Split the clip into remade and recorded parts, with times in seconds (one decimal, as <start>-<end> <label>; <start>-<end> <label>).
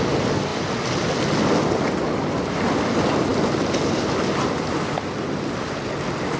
0.0-6.4 recorded